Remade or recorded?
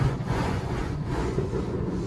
remade